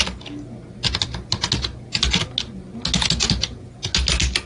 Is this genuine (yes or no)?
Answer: yes